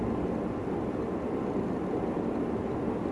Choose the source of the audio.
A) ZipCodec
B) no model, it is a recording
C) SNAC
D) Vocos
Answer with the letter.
B